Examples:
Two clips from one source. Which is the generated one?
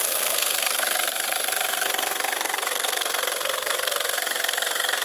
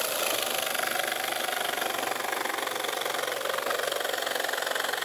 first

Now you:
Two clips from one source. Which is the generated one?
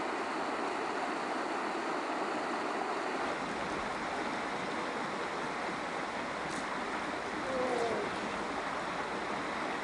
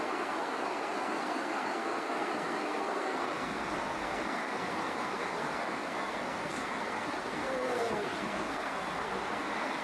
second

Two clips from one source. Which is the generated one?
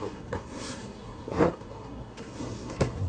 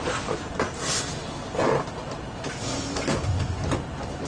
first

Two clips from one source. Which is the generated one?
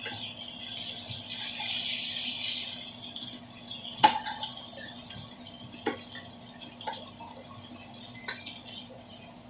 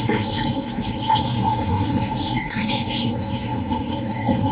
second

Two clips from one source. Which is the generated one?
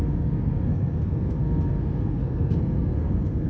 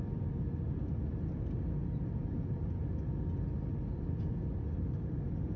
first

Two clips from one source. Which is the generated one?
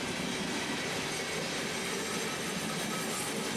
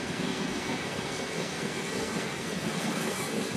second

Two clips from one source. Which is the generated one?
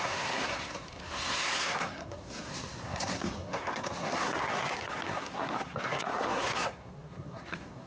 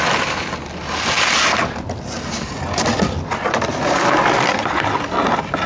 first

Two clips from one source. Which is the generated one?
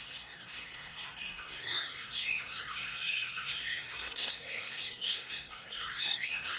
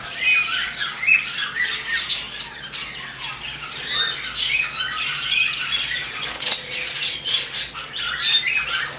first